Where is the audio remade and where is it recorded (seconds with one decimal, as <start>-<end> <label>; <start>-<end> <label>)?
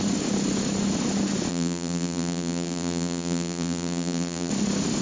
0.0-1.5 recorded; 1.5-4.5 remade; 4.5-5.0 recorded